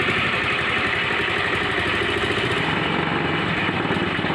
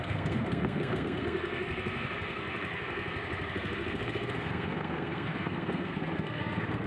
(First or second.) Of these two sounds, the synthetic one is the second